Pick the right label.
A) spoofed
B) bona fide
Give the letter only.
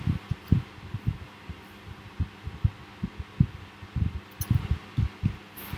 B